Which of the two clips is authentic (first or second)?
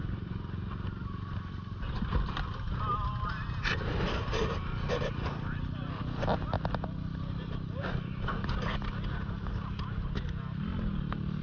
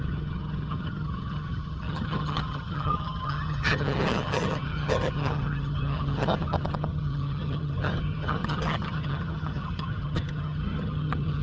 first